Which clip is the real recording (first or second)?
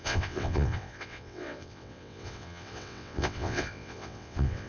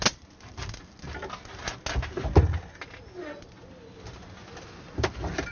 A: second